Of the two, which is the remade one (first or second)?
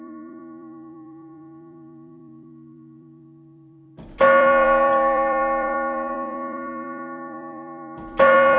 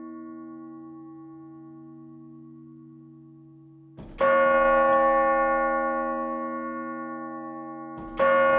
first